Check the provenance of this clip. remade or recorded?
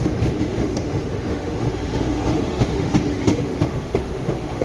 remade